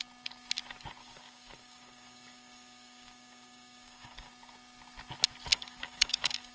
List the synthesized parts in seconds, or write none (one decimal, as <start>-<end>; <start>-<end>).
1.0-4.3; 5.5-6.5